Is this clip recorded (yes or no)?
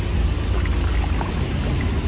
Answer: yes